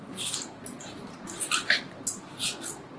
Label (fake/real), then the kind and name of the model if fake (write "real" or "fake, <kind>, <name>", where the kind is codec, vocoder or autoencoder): real